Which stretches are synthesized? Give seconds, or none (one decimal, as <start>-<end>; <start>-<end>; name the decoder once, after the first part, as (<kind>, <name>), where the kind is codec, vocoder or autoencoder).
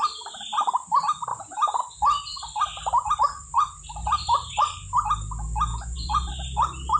1.3-1.8 (vocoder, Vocos); 5.7-6.3